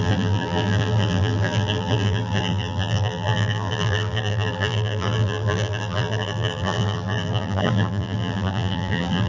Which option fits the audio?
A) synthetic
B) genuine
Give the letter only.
A